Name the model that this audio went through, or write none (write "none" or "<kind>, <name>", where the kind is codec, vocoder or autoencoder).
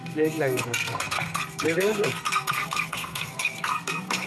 codec, SNAC